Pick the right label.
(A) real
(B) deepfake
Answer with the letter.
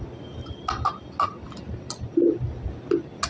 A